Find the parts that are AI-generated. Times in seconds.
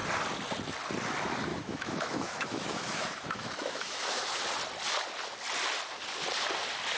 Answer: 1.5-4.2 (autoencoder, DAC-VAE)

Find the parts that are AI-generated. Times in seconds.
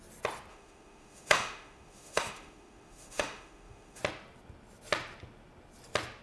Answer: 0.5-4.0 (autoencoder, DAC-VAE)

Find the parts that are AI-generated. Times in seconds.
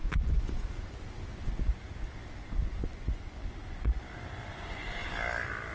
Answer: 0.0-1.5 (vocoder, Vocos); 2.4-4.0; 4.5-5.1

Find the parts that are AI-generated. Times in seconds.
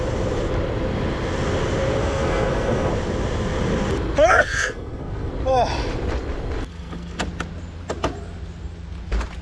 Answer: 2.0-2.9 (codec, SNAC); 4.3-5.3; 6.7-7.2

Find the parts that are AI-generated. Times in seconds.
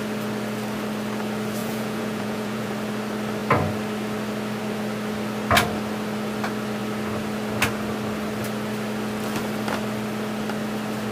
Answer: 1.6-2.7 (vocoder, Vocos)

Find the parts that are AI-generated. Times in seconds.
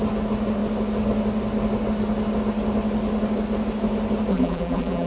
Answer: 4.3-5.1 (vocoder, BigVGAN v2)